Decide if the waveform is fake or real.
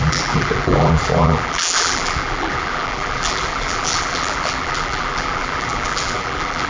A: fake